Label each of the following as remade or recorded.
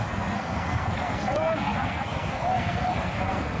remade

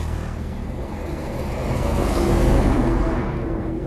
remade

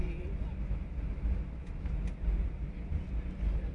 recorded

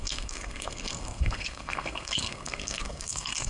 remade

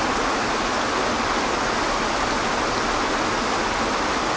recorded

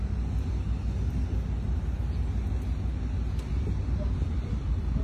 recorded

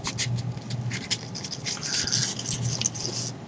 recorded